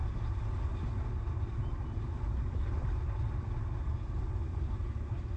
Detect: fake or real real